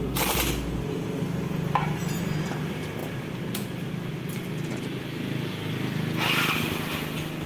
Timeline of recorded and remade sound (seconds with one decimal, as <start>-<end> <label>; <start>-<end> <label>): 0.0-7.5 recorded